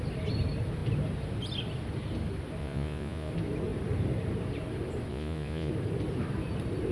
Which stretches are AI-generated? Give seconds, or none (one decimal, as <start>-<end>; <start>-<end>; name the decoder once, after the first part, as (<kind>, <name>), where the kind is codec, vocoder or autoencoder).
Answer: 2.6-3.3 (vocoder, Vocos); 5.1-5.7